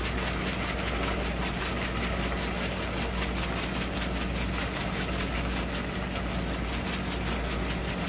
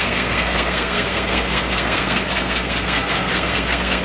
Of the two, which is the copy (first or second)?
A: second